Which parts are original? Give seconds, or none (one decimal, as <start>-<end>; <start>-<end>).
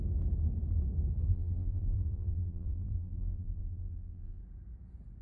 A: 0.0-1.3; 4.4-5.2